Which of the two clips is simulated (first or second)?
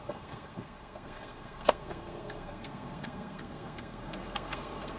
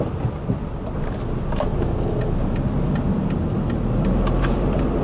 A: first